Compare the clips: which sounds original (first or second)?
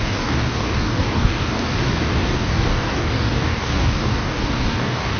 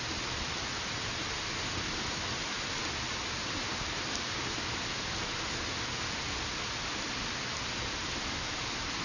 second